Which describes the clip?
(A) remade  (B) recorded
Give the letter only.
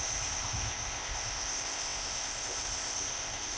A